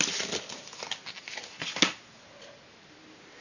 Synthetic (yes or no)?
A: no